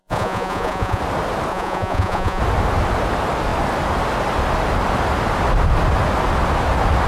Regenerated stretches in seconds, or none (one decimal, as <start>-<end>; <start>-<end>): 0.0-1.0; 1.5-2.4